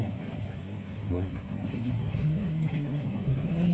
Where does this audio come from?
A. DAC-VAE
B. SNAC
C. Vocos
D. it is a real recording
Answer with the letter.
B